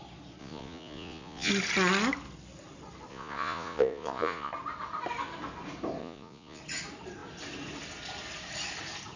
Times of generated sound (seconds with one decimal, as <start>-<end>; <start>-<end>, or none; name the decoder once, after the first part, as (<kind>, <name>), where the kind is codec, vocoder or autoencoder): 0.4-1.5 (vocoder, Vocos); 3.1-4.5; 6.0-6.6